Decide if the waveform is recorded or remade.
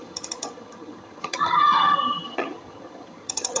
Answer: remade